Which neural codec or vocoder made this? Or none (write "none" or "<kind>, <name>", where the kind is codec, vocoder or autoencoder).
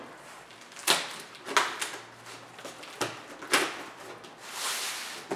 none